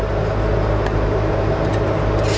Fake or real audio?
real